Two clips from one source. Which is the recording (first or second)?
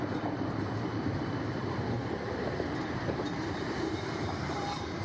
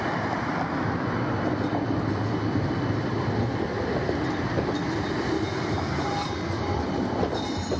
second